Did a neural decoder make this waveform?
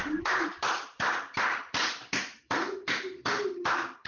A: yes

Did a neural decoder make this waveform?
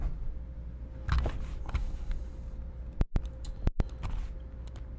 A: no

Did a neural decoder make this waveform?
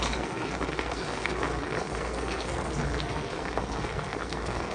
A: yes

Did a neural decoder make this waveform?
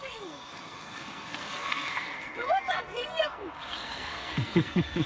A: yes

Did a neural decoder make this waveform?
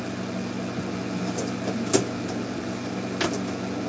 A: no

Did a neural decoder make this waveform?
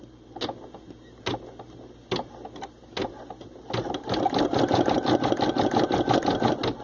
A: no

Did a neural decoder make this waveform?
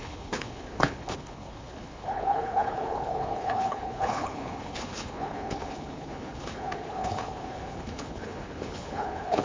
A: yes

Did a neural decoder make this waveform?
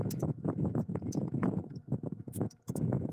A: yes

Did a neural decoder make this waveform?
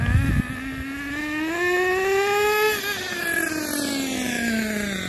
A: no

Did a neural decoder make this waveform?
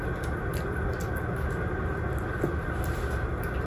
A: no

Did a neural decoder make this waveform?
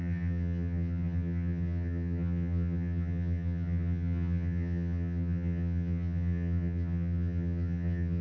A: yes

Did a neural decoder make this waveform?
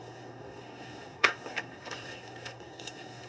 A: yes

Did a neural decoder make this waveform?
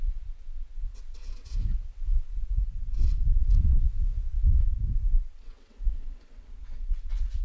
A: yes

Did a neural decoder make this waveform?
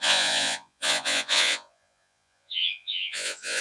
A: yes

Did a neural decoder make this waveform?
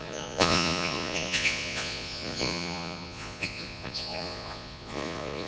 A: yes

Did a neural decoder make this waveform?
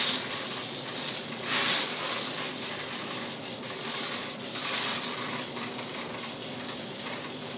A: no